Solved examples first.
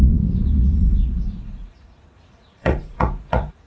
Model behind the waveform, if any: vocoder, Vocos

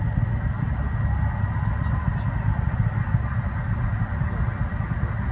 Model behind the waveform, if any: none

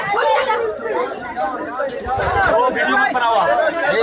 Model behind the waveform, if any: none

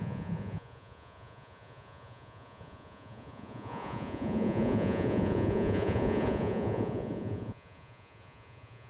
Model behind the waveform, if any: vocoder, Vocos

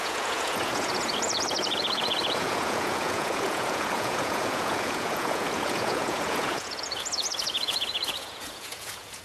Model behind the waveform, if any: vocoder, Vocos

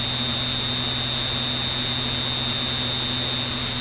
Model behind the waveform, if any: none